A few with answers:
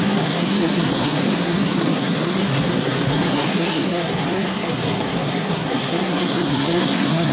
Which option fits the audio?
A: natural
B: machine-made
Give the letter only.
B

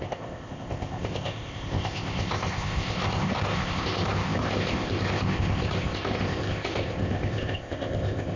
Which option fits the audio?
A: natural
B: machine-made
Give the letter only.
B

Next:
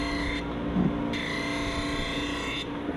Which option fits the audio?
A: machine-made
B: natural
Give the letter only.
B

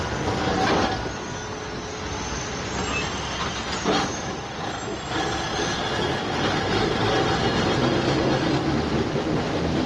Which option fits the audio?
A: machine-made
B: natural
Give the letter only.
B